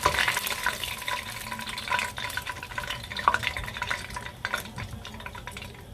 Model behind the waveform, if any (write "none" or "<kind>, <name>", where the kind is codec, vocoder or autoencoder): none